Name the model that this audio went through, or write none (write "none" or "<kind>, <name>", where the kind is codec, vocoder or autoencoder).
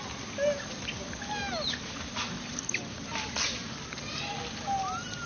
none